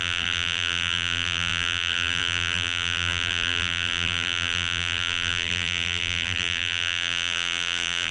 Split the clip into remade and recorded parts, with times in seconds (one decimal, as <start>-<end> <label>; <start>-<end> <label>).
0.0-8.1 remade

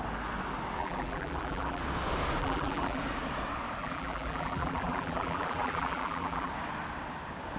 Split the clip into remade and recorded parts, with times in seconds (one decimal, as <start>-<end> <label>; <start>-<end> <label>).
0.0-0.8 recorded; 0.8-1.8 remade; 1.8-2.4 recorded; 2.4-3.0 remade; 3.0-3.8 recorded; 3.8-6.5 remade; 6.5-7.6 recorded